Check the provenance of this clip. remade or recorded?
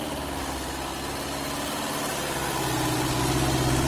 recorded